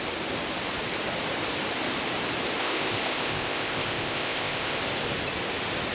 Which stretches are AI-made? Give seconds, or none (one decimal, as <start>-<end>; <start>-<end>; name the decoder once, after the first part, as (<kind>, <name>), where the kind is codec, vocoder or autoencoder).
2.6-4.8 (codec, ZipCodec)